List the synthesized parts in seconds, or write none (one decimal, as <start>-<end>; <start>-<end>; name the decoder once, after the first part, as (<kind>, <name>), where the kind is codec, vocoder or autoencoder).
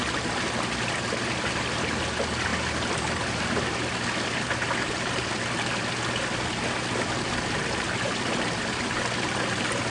none